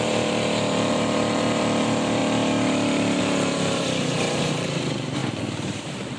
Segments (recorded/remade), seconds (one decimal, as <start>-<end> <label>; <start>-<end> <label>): 0.0-2.2 remade; 2.2-3.2 recorded; 3.2-6.2 remade